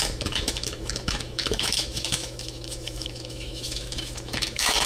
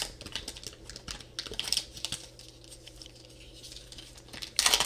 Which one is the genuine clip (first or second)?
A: second